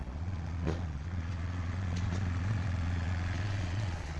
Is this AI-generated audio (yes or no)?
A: yes